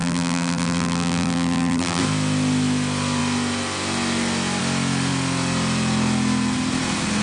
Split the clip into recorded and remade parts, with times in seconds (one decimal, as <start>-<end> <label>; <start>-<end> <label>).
0.0-2.0 remade; 2.0-7.2 recorded